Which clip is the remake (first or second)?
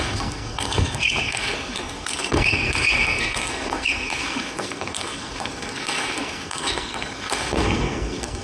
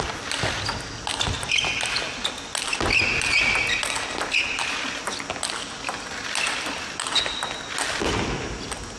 first